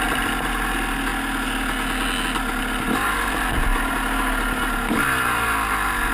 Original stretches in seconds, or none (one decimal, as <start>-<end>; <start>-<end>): 0.0-6.1